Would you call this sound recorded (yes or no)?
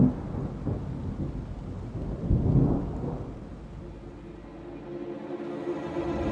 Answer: yes